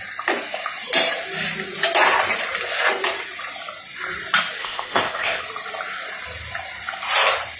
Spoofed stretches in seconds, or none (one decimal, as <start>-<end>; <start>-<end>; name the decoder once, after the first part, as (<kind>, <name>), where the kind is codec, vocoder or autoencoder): 4.6-5.4 (codec, ZipCodec)